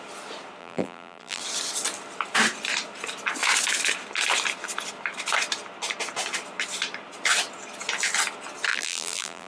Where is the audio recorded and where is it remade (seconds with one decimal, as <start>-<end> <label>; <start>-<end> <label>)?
0.0-0.6 recorded; 0.6-1.4 remade; 1.4-8.7 recorded; 8.7-9.5 remade